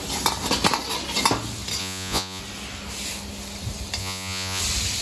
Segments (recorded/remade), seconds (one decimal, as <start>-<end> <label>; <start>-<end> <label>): 0.0-1.8 recorded; 1.8-2.4 remade; 2.4-4.0 recorded; 4.0-4.6 remade; 4.6-5.0 recorded